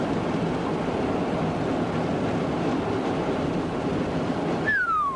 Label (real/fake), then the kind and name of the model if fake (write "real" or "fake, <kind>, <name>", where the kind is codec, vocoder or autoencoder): real